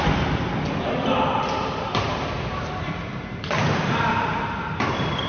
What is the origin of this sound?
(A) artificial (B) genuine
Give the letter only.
B